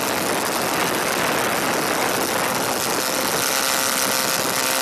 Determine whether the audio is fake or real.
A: real